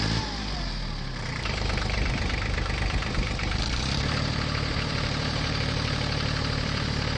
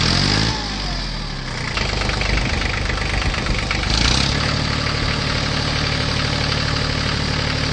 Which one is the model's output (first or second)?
first